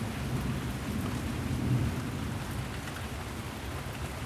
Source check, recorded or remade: recorded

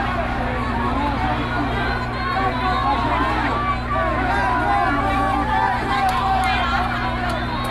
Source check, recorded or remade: recorded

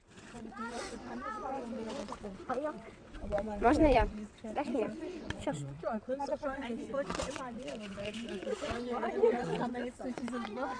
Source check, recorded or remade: remade